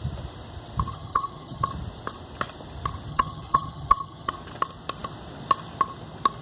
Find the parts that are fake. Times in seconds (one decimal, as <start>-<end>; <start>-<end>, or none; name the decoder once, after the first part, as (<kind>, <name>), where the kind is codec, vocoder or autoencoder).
0.9-1.7 (vocoder, HiFi-GAN); 3.1-4.3